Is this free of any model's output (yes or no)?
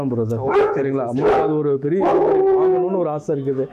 no